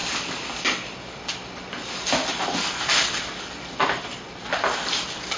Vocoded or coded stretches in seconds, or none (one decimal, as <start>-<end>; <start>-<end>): none